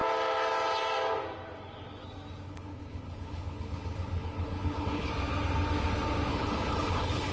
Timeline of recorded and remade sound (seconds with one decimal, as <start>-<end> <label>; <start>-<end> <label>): 0.0-2.5 recorded; 2.5-5.1 remade; 5.1-6.3 recorded; 6.3-7.3 remade